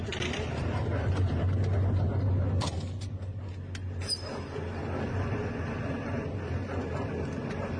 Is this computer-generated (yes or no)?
no